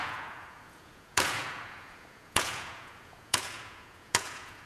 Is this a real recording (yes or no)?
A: no